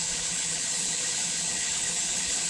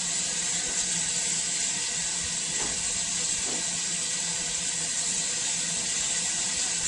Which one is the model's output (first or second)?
first